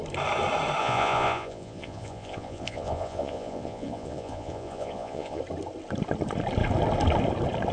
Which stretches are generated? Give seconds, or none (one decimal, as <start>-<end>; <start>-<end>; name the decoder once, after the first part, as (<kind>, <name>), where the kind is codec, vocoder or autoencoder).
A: 0.8-5.4 (vocoder, Vocos)